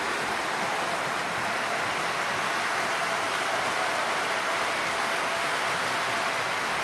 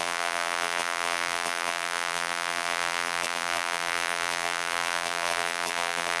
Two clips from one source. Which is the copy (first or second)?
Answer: second